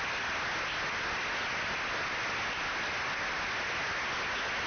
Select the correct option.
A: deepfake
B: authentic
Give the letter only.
B